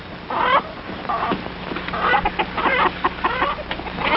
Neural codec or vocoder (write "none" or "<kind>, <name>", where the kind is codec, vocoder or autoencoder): none